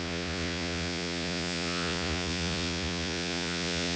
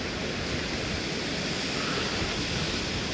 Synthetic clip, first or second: first